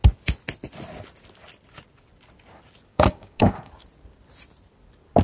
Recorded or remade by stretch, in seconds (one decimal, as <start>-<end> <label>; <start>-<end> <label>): 0.0-2.9 recorded; 2.9-3.7 remade; 3.7-5.2 recorded